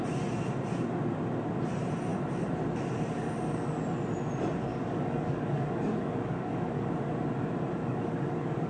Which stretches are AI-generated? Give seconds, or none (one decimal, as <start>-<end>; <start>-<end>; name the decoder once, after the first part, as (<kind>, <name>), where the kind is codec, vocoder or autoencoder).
4.7-7.1 (codec, DAC); 7.8-8.7